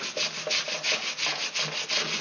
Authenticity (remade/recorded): recorded